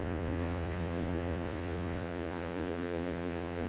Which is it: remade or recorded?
remade